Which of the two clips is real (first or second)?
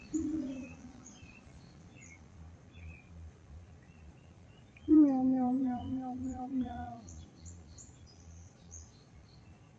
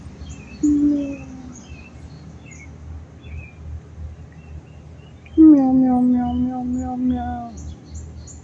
second